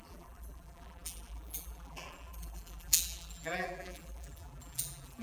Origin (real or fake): fake